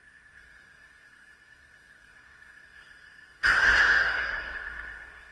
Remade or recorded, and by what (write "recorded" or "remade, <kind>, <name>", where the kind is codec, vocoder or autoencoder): remade, codec, SNAC